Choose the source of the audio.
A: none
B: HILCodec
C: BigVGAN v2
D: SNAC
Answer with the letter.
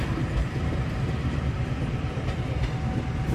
C